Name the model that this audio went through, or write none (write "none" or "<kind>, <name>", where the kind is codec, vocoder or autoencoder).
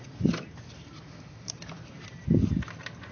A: vocoder, BigVGAN v2